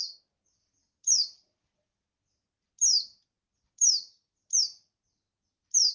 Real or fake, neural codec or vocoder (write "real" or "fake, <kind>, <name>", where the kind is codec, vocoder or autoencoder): real